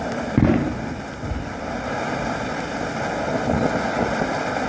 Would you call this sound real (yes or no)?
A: yes